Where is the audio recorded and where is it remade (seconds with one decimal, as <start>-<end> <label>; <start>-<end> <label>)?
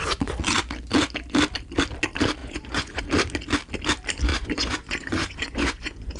0.0-2.4 recorded; 2.4-3.0 remade; 3.0-4.3 recorded; 4.3-6.2 remade